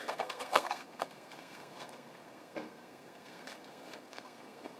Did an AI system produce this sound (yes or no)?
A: yes